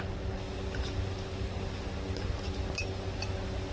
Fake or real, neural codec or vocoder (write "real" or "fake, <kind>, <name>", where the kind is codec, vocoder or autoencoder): real